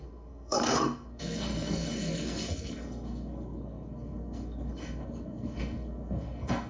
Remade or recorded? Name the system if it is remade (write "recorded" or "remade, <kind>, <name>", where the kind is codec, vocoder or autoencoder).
remade, codec, SNAC